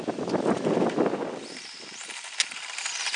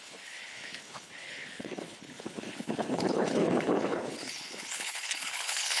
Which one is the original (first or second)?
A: first